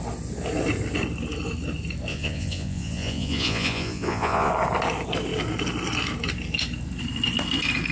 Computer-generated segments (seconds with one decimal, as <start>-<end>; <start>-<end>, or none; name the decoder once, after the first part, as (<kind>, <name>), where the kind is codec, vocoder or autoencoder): 2.1-4.5 (vocoder, Vocos)

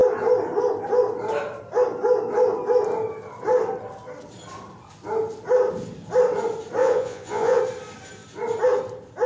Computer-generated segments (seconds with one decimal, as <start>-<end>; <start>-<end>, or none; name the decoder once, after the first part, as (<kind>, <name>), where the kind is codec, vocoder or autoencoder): 6.8-7.6 (vocoder, Vocos)

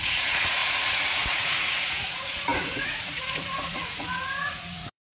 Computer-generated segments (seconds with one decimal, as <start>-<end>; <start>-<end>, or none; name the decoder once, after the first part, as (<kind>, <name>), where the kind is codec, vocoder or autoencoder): 0.0-5.2 (vocoder, Vocos)

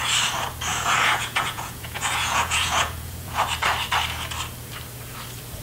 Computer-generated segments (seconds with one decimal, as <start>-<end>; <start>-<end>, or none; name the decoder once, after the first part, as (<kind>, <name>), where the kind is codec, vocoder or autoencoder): 0.7-3.4 (vocoder, Vocos)

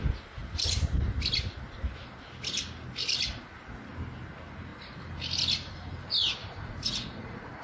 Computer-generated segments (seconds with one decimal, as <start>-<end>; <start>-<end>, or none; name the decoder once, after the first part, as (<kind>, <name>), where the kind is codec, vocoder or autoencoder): 6.4-7.6 (vocoder, Vocos)